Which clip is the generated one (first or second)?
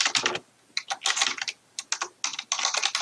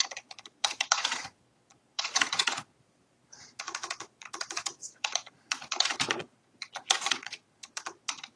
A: second